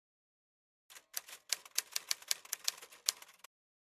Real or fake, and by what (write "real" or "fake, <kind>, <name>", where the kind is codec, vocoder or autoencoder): real